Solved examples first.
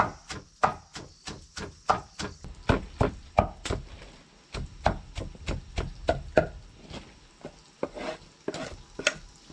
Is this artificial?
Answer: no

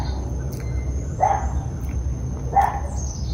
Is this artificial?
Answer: no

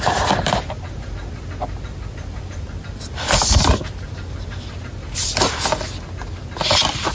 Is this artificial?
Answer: no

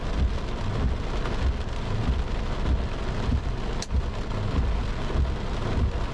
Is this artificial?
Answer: no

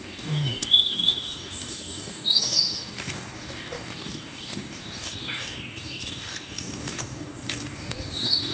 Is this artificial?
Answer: yes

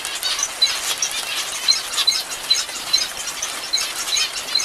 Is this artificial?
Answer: no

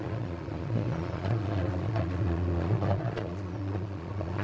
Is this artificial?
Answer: yes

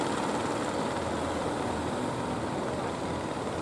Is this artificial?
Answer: no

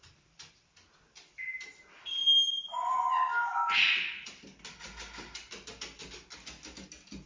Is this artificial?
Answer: no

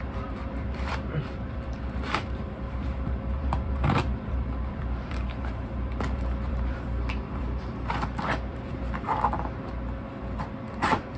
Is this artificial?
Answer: yes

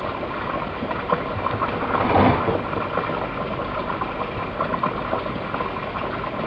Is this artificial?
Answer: no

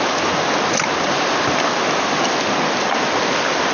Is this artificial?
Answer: no